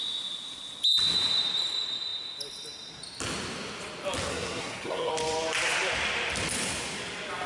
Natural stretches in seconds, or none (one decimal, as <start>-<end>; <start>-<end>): 0.0-4.3; 5.1-7.5